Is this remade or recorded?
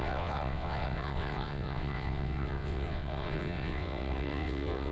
remade